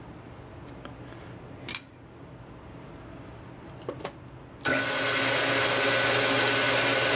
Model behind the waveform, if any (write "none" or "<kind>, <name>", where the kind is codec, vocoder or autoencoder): none